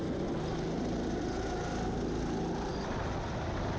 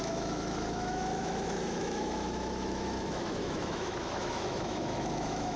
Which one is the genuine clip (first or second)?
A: first